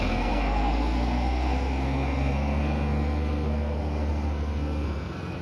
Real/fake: fake